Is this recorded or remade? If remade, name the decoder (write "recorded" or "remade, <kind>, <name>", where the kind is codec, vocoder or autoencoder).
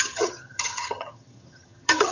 remade, vocoder, HiFi-GAN